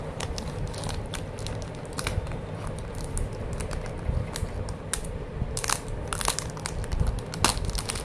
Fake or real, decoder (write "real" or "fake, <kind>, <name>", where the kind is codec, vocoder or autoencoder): real